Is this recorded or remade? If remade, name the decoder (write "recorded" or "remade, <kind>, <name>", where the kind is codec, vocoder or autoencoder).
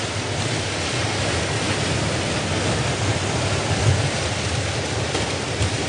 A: recorded